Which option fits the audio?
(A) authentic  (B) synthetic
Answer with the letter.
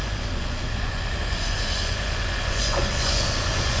B